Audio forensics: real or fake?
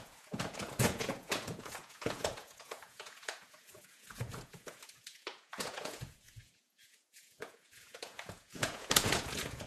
fake